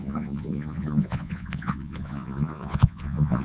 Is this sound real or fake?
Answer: fake